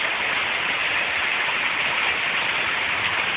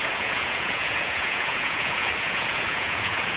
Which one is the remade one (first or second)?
second